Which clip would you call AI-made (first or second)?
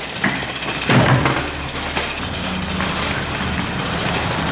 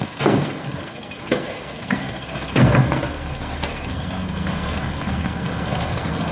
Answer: second